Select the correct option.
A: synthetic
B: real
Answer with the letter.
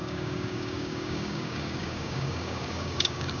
A